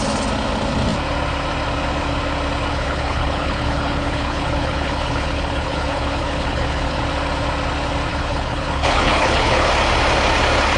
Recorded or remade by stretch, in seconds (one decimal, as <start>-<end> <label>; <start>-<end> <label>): 0.0-2.7 recorded; 2.7-7.0 remade; 7.0-8.1 recorded; 8.1-9.7 remade; 9.7-10.8 recorded